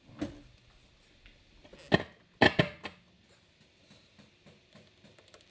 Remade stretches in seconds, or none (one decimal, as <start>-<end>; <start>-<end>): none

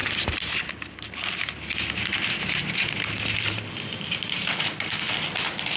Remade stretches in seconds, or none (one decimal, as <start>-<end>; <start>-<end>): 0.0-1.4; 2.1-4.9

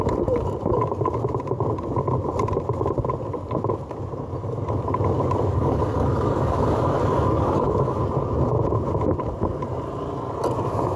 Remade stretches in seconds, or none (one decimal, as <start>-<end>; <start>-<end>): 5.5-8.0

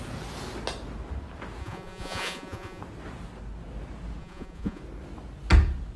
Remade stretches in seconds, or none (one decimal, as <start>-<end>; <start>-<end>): 1.6-2.8; 4.2-4.8

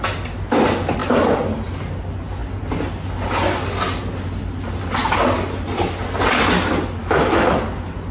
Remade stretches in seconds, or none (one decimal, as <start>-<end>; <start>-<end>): 7.0-7.6